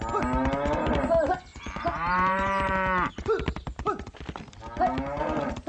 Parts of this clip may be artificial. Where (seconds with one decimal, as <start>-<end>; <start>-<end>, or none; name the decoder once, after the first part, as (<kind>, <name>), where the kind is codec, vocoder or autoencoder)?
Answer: 1.5-2.7 (vocoder, BigVGAN v2)